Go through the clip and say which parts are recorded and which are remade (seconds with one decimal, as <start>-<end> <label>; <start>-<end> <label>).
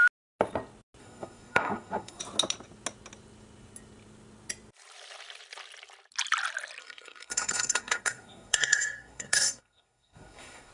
0.0-1.0 recorded; 1.0-2.2 remade; 2.2-6.8 recorded; 6.8-10.7 remade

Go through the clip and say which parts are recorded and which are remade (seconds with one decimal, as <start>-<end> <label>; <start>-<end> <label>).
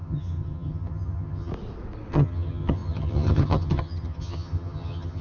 0.0-1.5 remade; 1.5-2.1 recorded; 2.1-5.2 remade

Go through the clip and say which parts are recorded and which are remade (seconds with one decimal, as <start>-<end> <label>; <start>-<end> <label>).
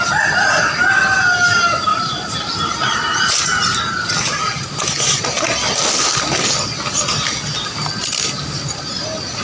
0.0-1.9 recorded; 1.9-5.2 remade; 5.2-9.4 recorded